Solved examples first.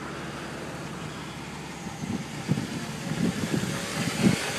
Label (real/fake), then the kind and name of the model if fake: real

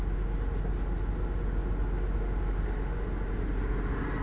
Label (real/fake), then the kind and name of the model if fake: real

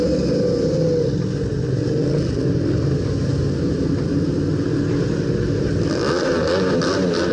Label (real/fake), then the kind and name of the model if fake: real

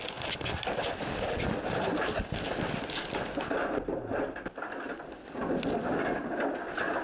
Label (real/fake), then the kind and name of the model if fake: real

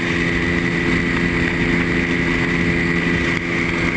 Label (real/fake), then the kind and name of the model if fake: real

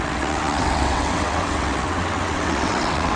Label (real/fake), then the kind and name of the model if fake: fake, vocoder, WaveNeXt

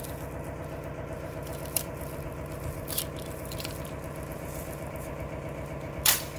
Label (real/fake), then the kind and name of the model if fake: fake, vocoder, BigVGAN v2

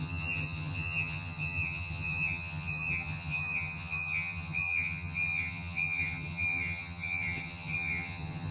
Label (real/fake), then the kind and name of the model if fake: fake, vocoder, HiFi-GAN